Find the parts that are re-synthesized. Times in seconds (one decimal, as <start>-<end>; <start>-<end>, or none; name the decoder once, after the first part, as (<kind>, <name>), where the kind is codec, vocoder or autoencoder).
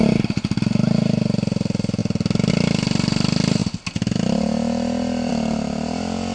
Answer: none